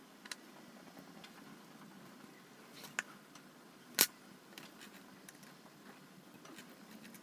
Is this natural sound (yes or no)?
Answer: yes